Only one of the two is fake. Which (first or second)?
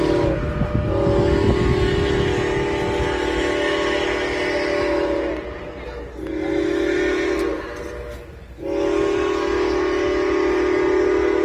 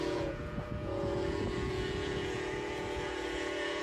second